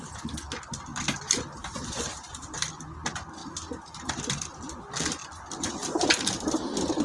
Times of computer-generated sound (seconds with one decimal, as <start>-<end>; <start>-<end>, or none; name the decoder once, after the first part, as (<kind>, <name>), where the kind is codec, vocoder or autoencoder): 0.9-2.8 (vocoder, BigVGAN v2); 3.4-4.2